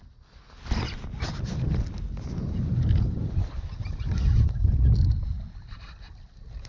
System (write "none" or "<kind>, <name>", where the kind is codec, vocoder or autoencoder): none